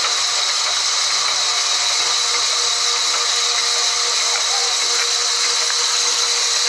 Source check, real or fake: real